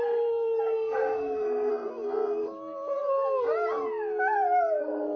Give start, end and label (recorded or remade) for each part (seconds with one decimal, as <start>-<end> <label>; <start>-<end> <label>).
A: 0.0-1.7 remade; 1.7-4.8 recorded; 4.8-5.2 remade